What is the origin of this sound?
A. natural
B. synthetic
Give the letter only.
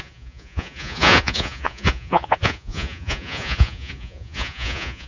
B